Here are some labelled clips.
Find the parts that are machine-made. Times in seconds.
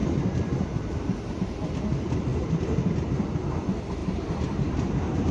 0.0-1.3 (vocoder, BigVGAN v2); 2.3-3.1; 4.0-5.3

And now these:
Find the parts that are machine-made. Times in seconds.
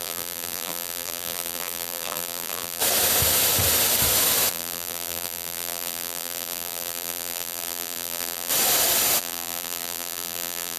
0.0-2.8 (vocoder, BigVGAN v2); 4.5-8.5; 9.2-10.8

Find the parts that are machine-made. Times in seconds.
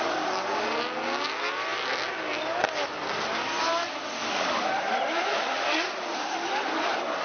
4.2-4.9 (codec, DAC)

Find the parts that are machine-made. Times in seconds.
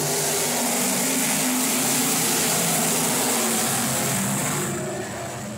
2.0-2.8 (vocoder, BigVGAN v2)